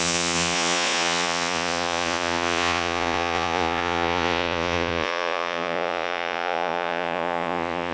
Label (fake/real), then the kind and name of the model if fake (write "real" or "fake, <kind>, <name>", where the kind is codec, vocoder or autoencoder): fake, vocoder, Vocos